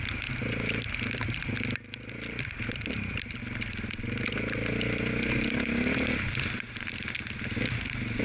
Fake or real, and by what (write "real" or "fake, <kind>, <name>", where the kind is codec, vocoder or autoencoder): real